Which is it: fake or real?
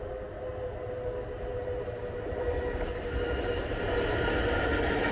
real